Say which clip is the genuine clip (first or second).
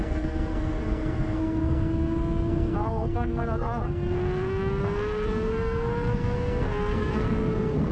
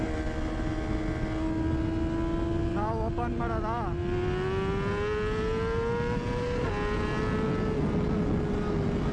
second